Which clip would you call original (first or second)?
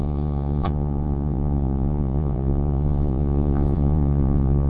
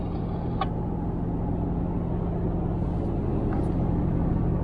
second